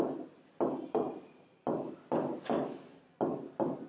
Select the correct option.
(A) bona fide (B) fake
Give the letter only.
A